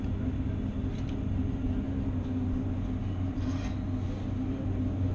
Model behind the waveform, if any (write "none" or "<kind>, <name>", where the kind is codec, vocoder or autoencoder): none